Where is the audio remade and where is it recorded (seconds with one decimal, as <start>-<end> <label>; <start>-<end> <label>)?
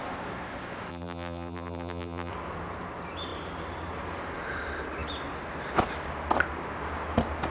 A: 0.0-0.9 recorded; 0.9-2.3 remade; 2.3-7.5 recorded